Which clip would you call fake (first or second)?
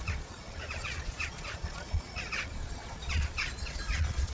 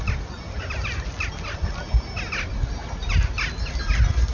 first